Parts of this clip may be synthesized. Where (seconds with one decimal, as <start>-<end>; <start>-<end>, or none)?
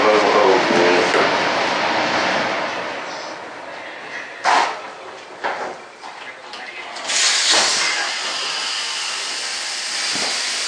none